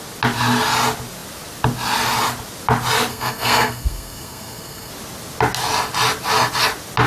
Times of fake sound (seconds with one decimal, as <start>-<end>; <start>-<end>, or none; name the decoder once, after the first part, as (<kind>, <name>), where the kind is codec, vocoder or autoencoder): 3.1-4.9 (codec, SNAC)